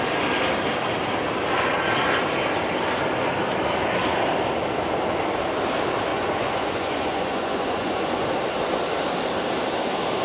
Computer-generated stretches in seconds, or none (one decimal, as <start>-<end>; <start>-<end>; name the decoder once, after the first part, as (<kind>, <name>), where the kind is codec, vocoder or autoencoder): 6.1-8.3 (vocoder, Vocos)